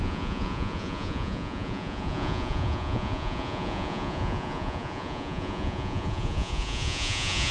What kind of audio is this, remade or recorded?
remade